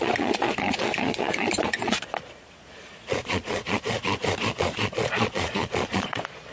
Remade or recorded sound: remade